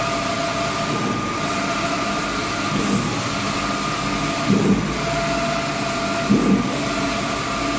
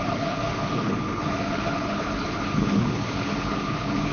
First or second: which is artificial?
second